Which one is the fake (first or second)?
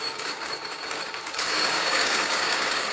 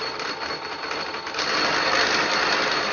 first